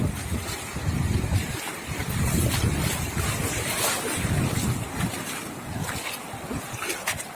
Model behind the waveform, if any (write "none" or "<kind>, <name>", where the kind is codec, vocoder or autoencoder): none